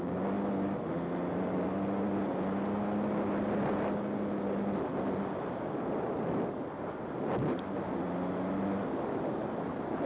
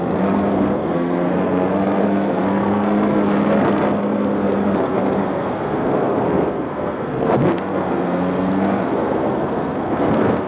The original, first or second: first